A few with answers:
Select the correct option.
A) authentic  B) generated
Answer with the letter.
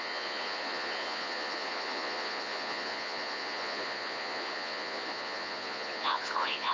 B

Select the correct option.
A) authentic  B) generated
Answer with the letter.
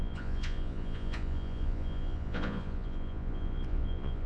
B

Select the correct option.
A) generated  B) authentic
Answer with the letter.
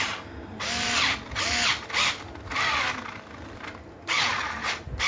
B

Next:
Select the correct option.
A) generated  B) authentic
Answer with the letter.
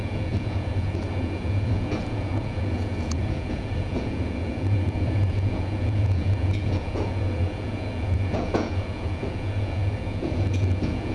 A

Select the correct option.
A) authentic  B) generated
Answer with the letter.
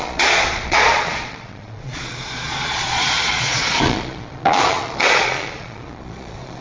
B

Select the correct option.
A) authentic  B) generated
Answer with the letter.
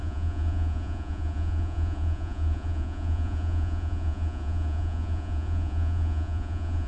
B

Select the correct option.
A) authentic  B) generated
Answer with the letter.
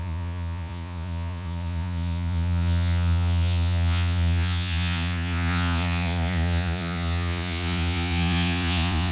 B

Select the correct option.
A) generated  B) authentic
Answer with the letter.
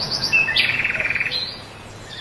A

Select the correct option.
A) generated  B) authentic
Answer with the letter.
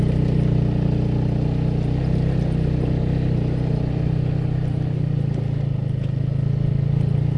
B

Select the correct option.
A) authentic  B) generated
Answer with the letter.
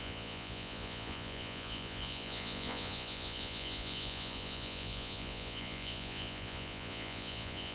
B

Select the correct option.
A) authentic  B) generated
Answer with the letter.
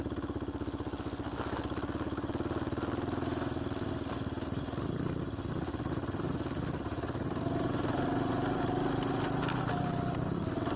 A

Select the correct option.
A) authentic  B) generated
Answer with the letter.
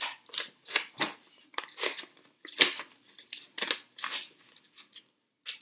A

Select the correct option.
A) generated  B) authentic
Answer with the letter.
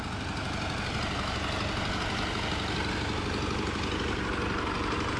B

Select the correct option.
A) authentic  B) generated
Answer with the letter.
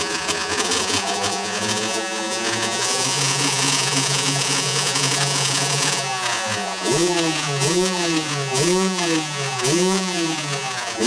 B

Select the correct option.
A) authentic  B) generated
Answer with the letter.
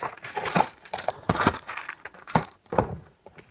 B